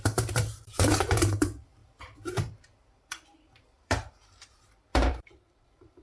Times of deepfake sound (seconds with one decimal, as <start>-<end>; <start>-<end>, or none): 0.0-6.0